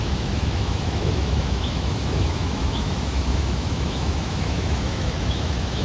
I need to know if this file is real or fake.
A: fake